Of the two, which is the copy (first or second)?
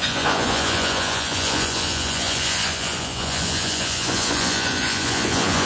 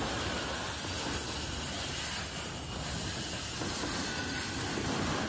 first